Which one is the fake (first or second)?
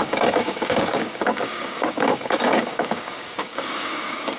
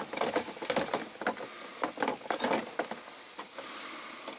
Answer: first